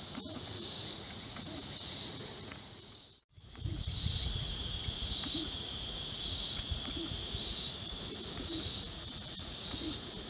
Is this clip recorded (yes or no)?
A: no